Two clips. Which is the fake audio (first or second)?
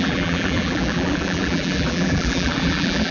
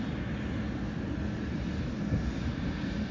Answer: first